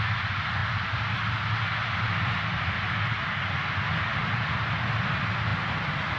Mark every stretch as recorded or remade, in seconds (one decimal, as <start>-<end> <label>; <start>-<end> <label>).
0.0-4.1 recorded; 4.1-4.6 remade; 4.6-6.2 recorded